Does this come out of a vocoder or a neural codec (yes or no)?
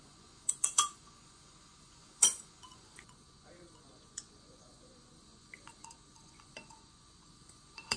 yes